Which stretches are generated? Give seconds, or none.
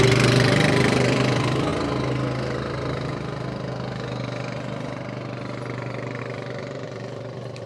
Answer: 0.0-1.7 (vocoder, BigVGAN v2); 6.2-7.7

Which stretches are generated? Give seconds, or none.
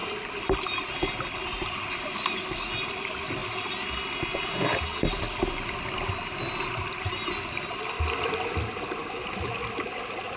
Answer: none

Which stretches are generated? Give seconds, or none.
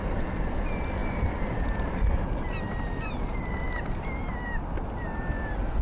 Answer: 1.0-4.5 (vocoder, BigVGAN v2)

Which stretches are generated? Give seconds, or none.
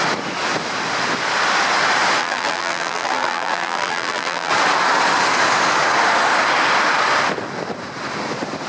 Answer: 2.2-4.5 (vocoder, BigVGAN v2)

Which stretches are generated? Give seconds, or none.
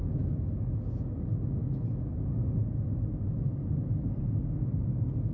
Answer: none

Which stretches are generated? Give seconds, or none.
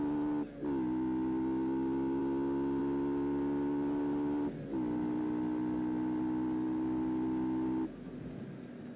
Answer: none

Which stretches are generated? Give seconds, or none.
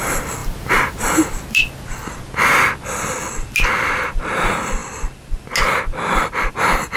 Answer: none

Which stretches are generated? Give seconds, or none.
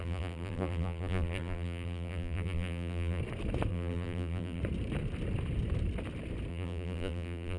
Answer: 0.0-3.2 (vocoder, BigVGAN v2); 3.7-4.6; 6.5-7.6